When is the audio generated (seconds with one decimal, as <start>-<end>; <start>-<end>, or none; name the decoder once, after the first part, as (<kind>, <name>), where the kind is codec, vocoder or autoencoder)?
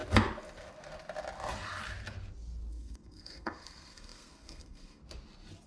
2.7-5.0 (codec, SNAC)